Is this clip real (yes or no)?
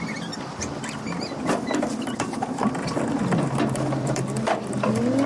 yes